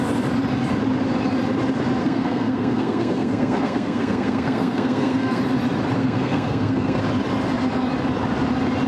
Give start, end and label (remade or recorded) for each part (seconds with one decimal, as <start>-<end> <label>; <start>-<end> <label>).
0.0-2.0 recorded; 2.0-5.4 remade; 5.4-6.0 recorded; 6.0-7.0 remade; 7.0-8.9 recorded